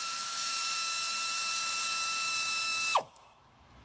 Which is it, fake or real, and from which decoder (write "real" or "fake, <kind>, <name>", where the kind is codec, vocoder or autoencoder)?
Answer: fake, autoencoder, DAC-VAE